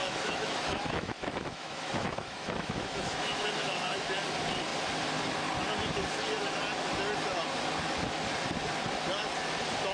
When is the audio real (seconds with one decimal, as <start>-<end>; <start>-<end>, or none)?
4.1-9.9